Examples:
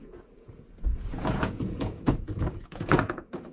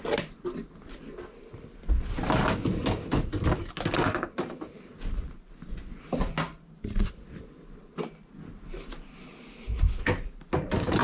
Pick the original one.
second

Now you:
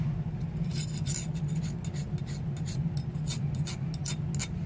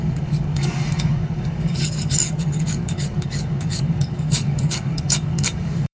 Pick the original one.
first